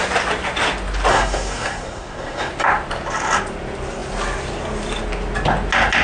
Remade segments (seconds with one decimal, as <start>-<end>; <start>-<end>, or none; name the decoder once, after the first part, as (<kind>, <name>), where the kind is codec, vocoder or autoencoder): 1.1-2.5 (codec, SNAC)